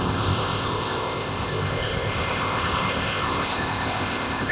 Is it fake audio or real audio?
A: fake